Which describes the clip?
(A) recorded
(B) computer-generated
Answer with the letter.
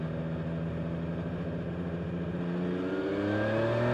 A